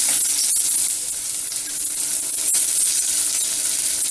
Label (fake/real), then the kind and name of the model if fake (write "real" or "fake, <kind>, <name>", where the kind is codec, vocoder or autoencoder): real